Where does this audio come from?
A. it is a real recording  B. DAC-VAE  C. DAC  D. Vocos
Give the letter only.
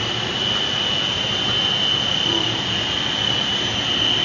A